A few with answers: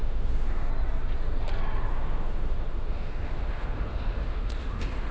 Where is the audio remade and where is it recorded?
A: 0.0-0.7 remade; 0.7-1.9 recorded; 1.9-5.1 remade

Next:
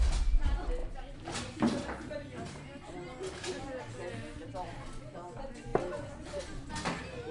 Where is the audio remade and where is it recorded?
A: 0.0-7.3 recorded